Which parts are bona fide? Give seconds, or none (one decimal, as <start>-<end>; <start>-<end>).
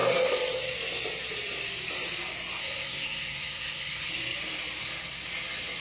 0.0-2.6; 4.1-5.8